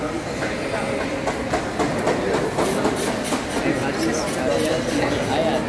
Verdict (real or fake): real